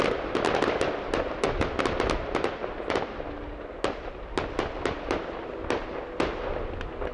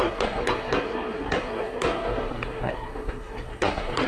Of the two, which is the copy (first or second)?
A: second